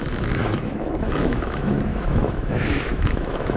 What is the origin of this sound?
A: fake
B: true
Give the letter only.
A